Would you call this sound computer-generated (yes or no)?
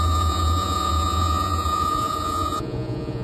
yes